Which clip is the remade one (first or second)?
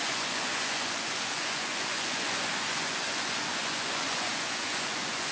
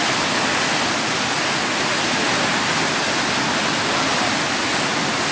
first